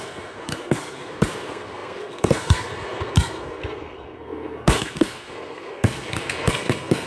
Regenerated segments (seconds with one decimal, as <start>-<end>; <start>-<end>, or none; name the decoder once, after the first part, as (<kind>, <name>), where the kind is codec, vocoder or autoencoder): 0.0-7.1 (codec, SNAC)